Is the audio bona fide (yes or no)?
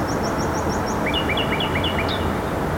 no